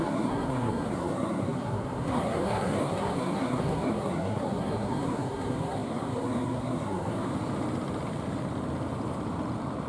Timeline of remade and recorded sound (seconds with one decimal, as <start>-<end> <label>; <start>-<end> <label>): 0.0-7.3 remade; 7.3-9.9 recorded